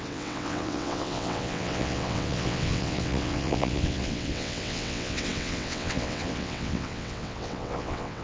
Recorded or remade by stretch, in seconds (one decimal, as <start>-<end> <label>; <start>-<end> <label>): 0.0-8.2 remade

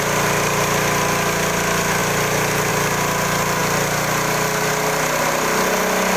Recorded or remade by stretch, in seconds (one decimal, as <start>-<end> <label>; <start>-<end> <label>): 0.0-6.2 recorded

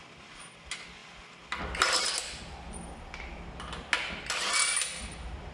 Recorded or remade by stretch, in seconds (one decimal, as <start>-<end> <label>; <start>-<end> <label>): 0.0-5.5 recorded